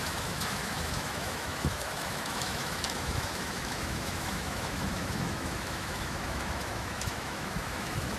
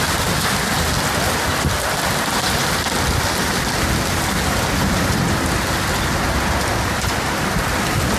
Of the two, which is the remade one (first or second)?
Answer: first